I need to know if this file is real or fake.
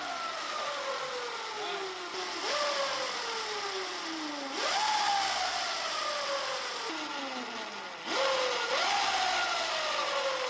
real